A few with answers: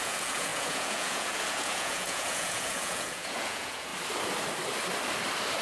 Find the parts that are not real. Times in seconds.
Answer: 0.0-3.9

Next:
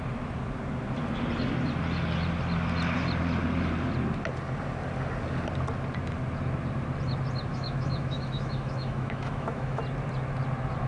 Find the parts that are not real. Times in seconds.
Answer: 7.5-9.8

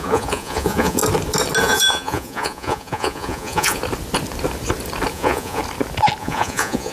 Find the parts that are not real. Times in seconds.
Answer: 0.0-1.0; 1.6-3.8; 5.1-5.6; 6.2-6.9

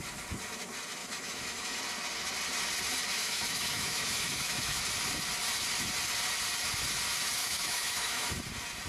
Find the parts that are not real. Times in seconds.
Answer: 1.0-1.8; 3.1-4.8; 7.4-8.3

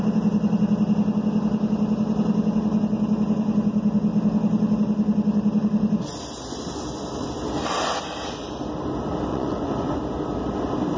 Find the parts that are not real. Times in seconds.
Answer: 9.3-10.0

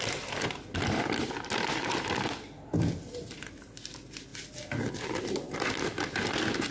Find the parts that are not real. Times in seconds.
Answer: none